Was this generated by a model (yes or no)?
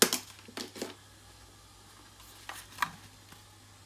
no